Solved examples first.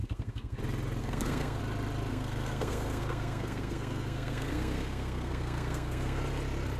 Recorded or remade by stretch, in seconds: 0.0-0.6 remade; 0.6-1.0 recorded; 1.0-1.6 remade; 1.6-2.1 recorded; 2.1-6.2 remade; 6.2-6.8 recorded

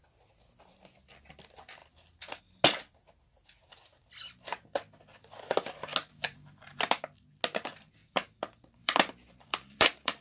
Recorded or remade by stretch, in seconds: 0.0-6.1 recorded; 6.1-6.8 remade; 6.8-8.0 recorded; 8.0-10.2 remade

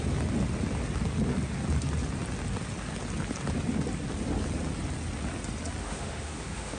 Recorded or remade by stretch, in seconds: 0.0-5.8 recorded; 5.8-6.8 remade

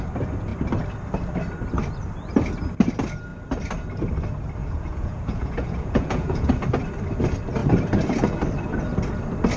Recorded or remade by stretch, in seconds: 0.0-4.6 recorded; 4.6-6.5 remade; 6.5-9.6 recorded

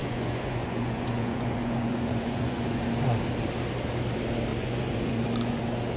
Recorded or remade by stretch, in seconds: 0.0-2.8 remade; 2.8-4.5 recorded; 4.5-5.6 remade; 5.6-6.0 recorded

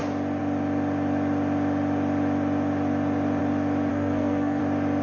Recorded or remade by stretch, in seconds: 0.0-3.9 recorded; 3.9-4.6 remade; 4.6-5.0 recorded